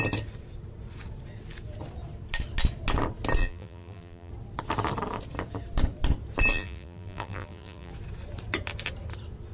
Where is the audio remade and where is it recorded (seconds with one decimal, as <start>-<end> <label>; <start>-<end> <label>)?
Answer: 0.0-3.4 recorded; 3.4-4.3 remade; 4.3-6.5 recorded; 6.5-7.9 remade; 7.9-9.5 recorded